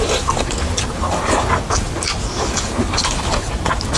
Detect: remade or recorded recorded